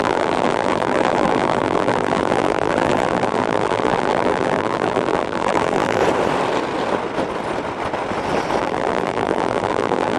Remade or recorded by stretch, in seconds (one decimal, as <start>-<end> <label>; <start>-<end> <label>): 0.0-6.0 remade; 6.0-8.6 recorded; 8.6-10.2 remade